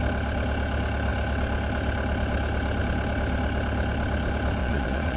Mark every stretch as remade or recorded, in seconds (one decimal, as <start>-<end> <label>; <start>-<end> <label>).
0.0-4.6 recorded; 4.6-5.2 remade